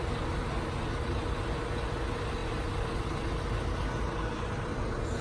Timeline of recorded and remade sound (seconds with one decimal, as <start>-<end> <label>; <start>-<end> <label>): 0.0-5.2 recorded